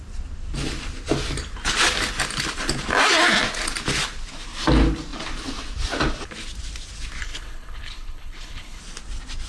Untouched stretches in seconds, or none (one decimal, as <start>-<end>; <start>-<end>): 0.0-7.2; 8.8-9.5